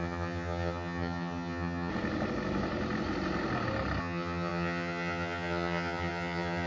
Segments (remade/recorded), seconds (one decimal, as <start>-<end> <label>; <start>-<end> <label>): 0.0-1.9 remade; 1.9-4.0 recorded; 4.0-6.7 remade

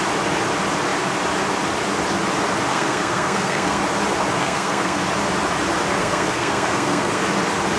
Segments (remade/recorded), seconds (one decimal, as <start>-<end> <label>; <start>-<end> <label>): 0.0-2.7 recorded; 2.7-3.8 remade; 3.8-4.4 recorded; 4.4-5.0 remade; 5.0-6.0 recorded; 6.0-7.2 remade; 7.2-7.8 recorded

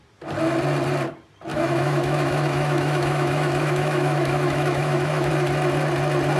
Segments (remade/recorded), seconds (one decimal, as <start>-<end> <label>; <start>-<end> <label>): 0.0-1.5 recorded; 1.5-5.3 remade; 5.3-6.4 recorded

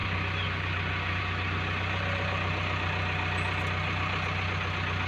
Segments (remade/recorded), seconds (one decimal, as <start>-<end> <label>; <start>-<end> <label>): 0.0-1.2 remade; 1.2-5.1 recorded

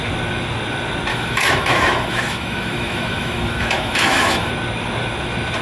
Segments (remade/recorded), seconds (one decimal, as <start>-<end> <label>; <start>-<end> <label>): 0.0-1.1 recorded; 1.1-4.5 remade; 4.5-5.6 recorded

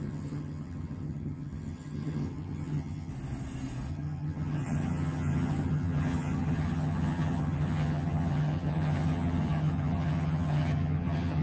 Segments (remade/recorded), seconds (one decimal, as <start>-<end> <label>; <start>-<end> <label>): 0.0-3.1 remade; 3.1-3.9 recorded; 3.9-11.4 remade